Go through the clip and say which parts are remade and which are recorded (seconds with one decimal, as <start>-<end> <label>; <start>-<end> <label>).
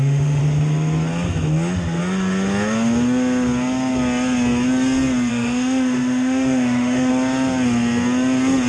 0.0-0.4 remade; 0.4-5.3 recorded; 5.3-7.1 remade; 7.1-8.7 recorded